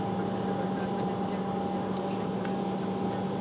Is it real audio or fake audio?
real